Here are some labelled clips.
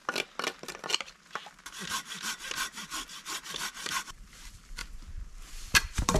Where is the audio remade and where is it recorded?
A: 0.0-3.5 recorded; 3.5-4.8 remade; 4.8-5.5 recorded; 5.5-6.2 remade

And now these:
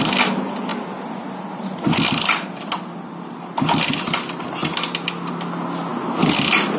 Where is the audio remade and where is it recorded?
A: 0.0-6.8 recorded

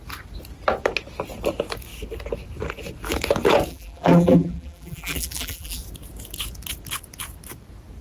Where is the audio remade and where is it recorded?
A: 0.0-3.7 recorded; 3.7-5.8 remade; 5.8-8.0 recorded

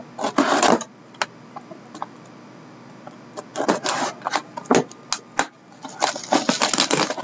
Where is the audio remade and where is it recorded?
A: 0.0-7.2 recorded

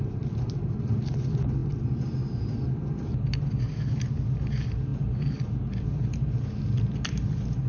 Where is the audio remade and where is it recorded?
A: 0.0-7.7 recorded